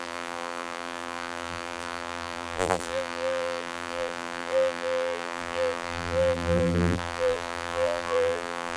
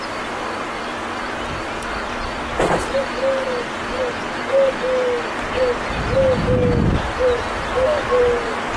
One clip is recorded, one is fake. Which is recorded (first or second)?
second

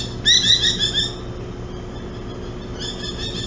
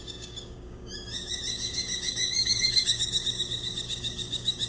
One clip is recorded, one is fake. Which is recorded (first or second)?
first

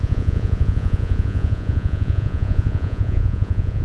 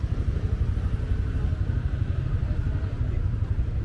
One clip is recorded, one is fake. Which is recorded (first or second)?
second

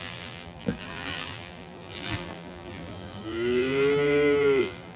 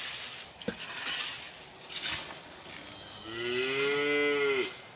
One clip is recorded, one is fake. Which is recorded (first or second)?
second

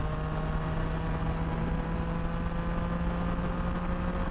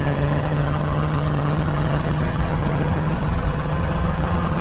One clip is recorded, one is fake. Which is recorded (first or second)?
first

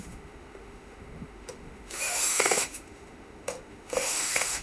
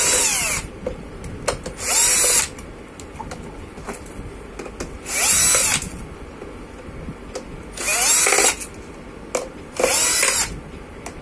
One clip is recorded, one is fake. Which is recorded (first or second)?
second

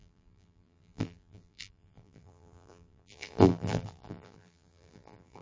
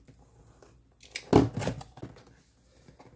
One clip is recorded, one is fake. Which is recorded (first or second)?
second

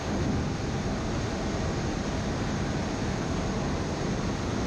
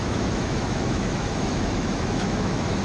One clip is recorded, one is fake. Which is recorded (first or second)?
first